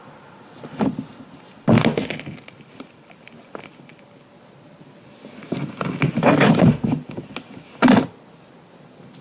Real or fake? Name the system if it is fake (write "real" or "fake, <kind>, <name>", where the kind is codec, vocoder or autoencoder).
real